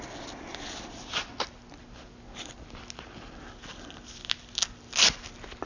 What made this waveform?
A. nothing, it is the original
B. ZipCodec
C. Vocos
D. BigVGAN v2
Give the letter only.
A